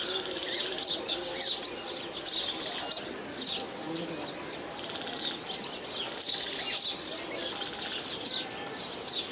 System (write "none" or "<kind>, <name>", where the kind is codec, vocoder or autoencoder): none